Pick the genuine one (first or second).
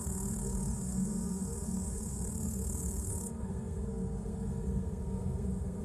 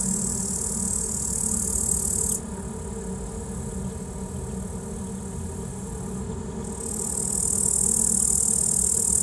second